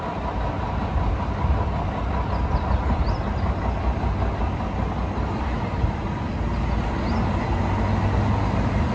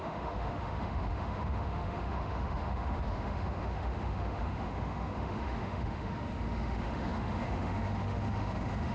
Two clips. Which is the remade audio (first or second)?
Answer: second